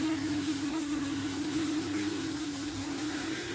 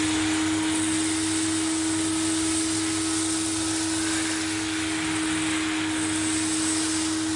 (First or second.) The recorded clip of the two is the second